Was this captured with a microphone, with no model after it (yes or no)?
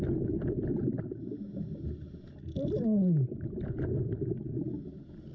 yes